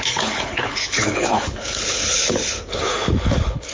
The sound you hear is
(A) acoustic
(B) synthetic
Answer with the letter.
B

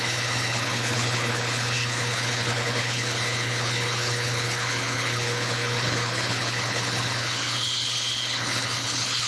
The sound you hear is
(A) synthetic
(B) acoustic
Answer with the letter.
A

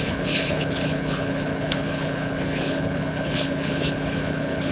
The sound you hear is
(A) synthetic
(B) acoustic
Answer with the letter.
A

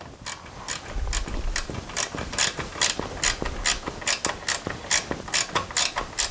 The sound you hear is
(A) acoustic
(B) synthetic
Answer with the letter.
A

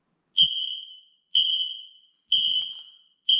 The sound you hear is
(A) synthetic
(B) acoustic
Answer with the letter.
B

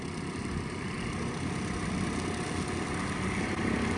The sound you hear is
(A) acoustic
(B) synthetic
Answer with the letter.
A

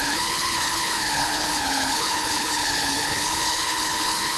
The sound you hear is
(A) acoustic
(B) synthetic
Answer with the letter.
B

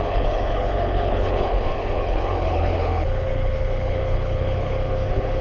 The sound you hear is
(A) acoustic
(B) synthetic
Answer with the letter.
B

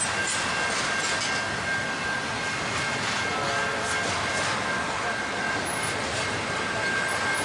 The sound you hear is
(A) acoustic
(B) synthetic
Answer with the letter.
A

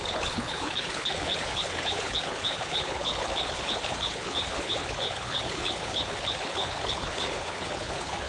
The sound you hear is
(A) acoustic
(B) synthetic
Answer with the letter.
B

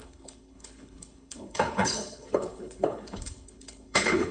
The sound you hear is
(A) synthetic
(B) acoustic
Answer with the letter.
A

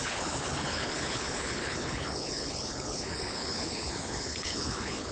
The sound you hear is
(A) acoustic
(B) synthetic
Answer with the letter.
B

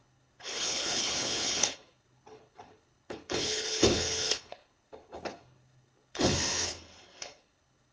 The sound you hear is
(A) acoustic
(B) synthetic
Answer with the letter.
B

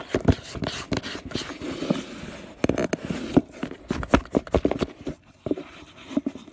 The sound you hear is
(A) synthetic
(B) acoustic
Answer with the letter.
B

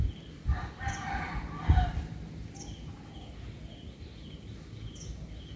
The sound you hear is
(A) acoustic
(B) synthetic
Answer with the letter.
A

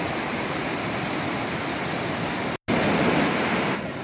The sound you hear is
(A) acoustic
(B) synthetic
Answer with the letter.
A